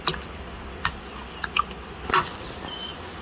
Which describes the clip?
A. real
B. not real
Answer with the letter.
A